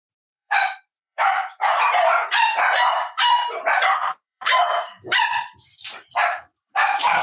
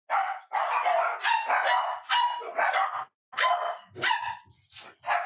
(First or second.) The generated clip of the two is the first